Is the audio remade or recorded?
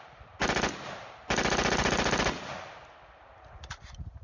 recorded